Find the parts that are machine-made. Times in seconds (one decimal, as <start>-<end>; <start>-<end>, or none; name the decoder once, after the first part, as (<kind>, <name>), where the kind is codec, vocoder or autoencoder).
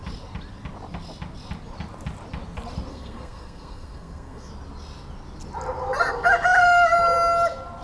2.9-4.5 (codec, SNAC)